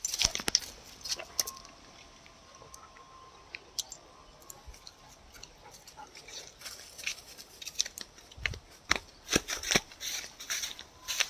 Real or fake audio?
real